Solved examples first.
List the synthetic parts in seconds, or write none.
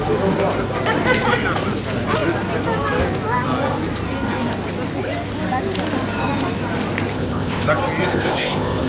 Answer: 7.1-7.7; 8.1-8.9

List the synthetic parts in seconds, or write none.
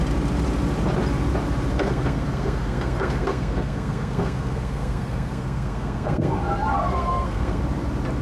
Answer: 1.7-6.4; 6.9-7.6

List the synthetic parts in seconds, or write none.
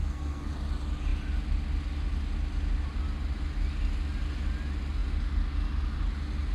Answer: 0.0-0.5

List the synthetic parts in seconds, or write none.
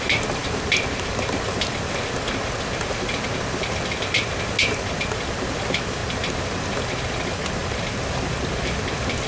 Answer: none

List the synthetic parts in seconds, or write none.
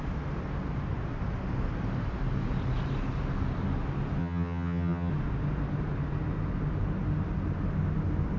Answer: 4.2-5.1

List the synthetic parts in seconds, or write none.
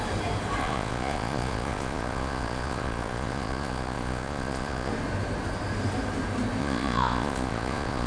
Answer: 0.6-4.9; 6.6-8.1